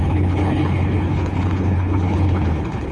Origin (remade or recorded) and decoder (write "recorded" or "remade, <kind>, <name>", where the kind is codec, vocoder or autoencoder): remade, codec, HILCodec